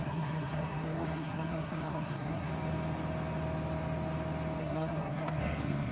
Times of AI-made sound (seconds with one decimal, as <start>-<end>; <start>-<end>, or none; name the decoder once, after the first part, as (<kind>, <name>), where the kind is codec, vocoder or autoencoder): 0.0-2.5 (codec, SNAC); 4.6-5.9